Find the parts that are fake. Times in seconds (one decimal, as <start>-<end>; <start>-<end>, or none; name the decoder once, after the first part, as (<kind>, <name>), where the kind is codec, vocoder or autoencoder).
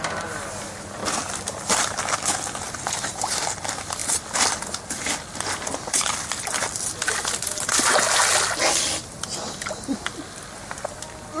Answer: none